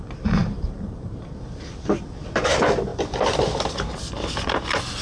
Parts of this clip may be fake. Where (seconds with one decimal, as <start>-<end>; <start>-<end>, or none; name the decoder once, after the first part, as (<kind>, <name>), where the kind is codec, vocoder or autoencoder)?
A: 0.4-1.4 (vocoder, BigVGAN v2)